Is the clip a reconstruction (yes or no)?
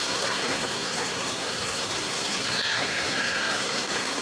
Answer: yes